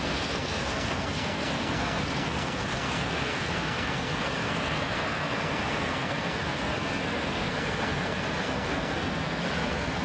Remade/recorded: remade